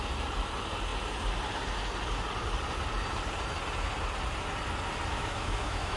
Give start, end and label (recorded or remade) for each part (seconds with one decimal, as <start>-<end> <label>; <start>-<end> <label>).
0.0-5.1 recorded; 5.1-6.0 remade